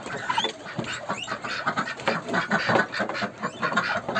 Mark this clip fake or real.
real